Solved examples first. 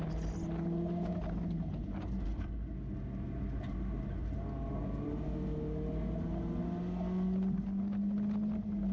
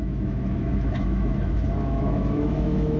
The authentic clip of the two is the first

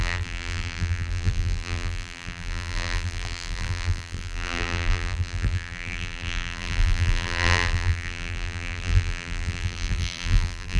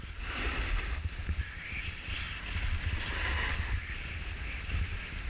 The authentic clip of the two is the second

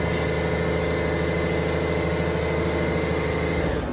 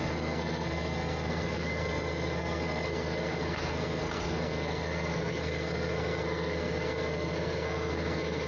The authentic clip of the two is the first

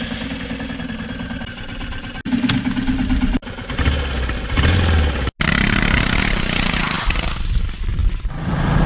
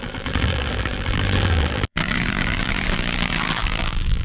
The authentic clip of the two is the first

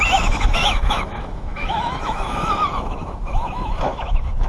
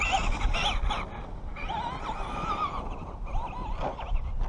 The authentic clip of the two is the second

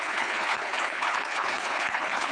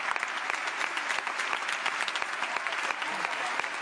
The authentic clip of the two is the second